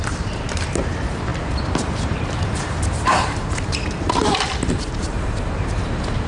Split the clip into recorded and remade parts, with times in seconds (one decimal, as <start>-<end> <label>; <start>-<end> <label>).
0.0-6.3 remade